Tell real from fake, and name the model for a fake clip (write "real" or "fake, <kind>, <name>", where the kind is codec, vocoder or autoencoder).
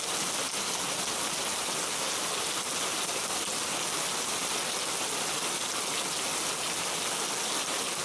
real